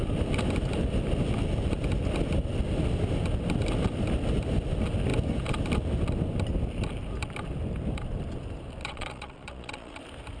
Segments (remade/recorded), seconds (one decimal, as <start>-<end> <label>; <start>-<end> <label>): 0.0-8.8 recorded; 8.8-10.0 remade; 10.0-10.4 recorded